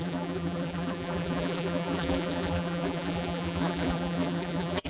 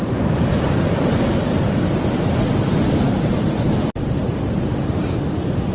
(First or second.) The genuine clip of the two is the second